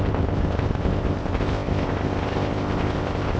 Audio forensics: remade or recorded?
remade